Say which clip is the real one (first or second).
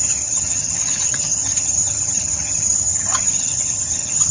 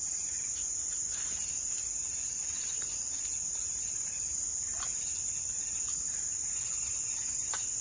second